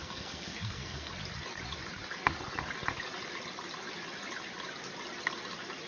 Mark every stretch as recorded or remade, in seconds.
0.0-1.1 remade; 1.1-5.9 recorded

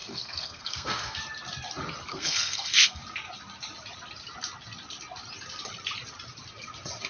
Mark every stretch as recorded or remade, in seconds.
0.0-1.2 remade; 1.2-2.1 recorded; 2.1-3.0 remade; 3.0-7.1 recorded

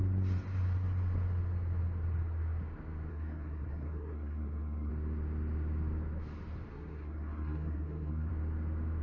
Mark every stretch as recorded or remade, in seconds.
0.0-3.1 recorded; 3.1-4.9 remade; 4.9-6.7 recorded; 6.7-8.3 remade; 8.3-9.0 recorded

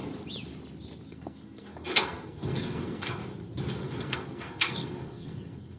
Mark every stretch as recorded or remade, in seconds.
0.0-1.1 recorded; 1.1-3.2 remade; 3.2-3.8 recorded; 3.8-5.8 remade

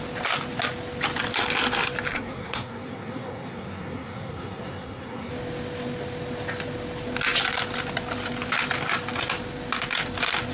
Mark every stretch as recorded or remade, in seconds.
0.0-2.1 recorded; 2.1-5.3 remade; 5.3-10.5 recorded

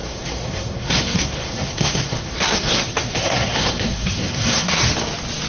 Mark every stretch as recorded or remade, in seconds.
0.0-4.8 remade; 4.8-5.5 recorded